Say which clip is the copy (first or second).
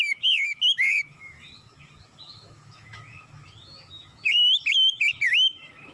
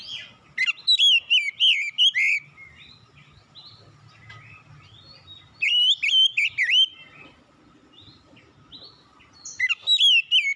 first